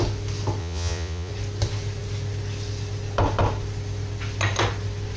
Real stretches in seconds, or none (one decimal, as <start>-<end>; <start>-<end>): 0.0-0.6; 1.3-5.2